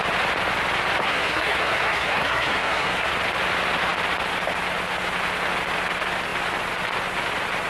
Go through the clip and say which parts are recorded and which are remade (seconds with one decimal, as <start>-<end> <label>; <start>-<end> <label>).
0.0-1.0 recorded; 1.0-3.1 remade; 3.1-7.7 recorded